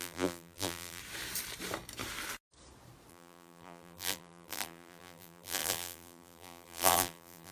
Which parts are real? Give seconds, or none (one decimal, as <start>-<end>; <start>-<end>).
1.0-3.1